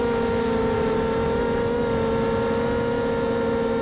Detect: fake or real real